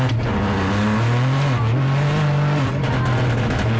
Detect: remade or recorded recorded